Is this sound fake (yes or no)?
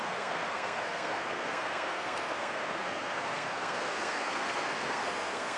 yes